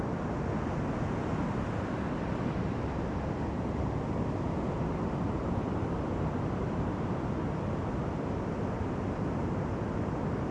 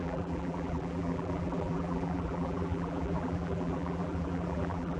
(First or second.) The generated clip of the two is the second